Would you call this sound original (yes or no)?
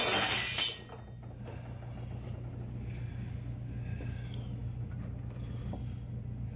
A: yes